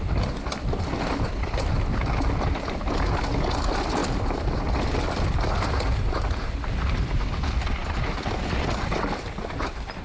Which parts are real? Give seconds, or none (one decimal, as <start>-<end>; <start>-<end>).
0.0-10.0